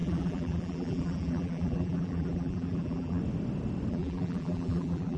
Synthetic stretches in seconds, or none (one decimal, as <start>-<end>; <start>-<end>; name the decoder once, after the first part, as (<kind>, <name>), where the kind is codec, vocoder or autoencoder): 0.0-3.2 (vocoder, BigVGAN v2); 3.9-5.2

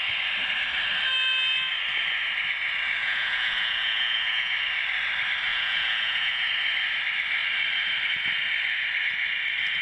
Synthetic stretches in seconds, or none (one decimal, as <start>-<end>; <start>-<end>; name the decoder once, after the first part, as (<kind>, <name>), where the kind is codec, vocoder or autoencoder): 3.0-4.5 (vocoder, Vocos); 5.5-6.5

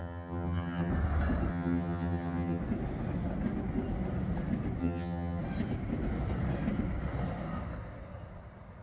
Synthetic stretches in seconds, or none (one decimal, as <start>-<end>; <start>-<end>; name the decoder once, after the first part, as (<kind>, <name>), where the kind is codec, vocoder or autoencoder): 0.0-0.9 (vocoder, HiFi-GAN); 1.5-2.6; 4.8-5.4

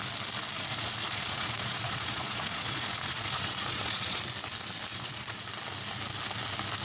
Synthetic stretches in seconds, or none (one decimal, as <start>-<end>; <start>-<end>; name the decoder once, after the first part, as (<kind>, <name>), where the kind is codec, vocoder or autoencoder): 0.7-4.2 (vocoder, Vocos); 4.9-5.5

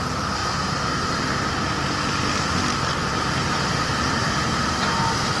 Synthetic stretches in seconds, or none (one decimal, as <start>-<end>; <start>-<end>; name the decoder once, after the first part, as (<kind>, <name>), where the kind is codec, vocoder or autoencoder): 0.4-1.9 (vocoder, BigVGAN v2); 3.0-4.7